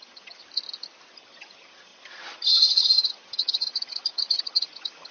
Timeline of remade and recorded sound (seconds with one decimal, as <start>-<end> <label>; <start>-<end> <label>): 0.0-0.4 remade; 0.4-1.1 recorded; 1.1-5.1 remade